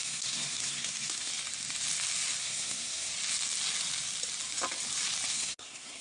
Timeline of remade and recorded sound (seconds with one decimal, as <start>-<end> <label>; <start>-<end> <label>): 0.0-1.3 remade; 1.3-2.4 recorded; 2.4-3.1 remade; 3.1-5.3 recorded; 5.3-6.0 remade